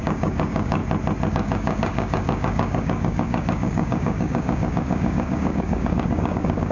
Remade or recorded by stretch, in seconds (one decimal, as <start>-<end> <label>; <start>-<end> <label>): 0.0-0.8 remade; 0.8-1.3 recorded; 1.3-6.7 remade